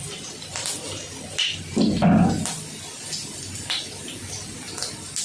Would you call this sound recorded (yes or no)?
yes